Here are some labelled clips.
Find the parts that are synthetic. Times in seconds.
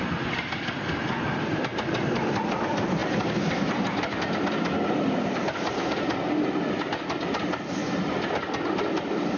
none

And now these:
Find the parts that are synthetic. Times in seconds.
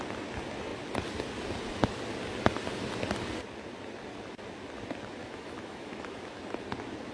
5.2-6.4 (autoencoder, DAC-VAE)